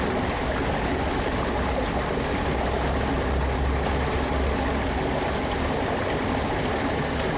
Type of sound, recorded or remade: recorded